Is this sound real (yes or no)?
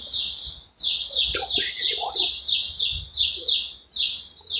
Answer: yes